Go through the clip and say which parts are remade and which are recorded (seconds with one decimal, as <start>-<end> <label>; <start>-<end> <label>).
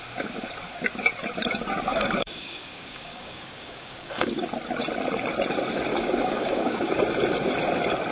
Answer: 0.0-1.9 recorded; 1.9-4.3 remade; 4.3-5.9 recorded; 5.9-6.9 remade; 6.9-8.1 recorded